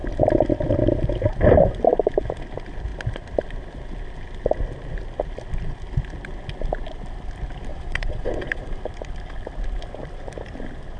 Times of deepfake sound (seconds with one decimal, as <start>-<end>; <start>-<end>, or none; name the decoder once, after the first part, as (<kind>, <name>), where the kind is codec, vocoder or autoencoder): 7.7-8.7 (vocoder, Vocos)